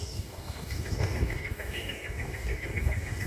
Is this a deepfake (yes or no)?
yes